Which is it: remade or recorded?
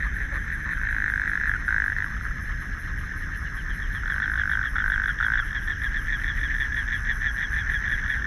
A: recorded